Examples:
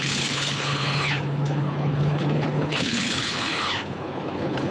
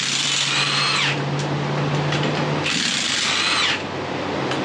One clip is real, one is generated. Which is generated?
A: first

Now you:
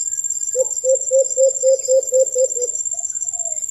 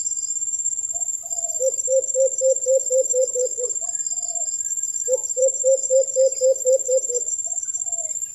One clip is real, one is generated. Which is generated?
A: second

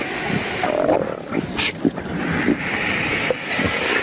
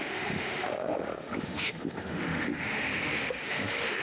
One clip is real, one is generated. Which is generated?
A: second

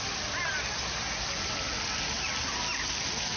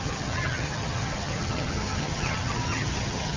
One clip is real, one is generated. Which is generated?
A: second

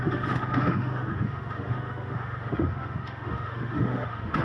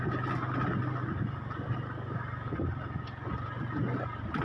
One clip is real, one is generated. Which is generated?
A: first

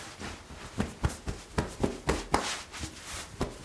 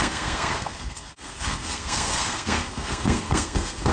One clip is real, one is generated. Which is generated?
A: second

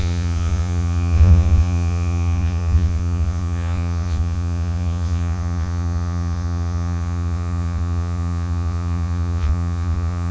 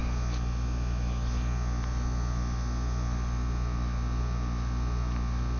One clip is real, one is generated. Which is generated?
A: first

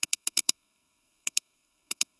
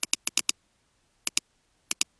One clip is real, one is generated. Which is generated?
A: first